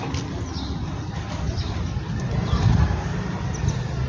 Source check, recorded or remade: remade